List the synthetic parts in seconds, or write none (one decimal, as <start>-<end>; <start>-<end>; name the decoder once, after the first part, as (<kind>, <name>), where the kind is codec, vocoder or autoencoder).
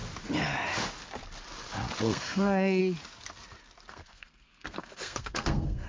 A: 2.0-2.8 (codec, SNAC); 3.9-5.9